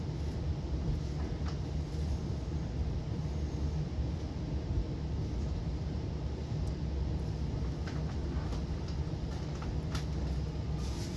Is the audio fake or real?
real